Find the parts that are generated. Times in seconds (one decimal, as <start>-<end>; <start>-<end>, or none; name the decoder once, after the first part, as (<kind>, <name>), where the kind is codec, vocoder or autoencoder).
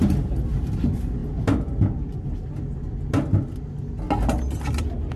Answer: none